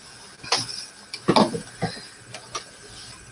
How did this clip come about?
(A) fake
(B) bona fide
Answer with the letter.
B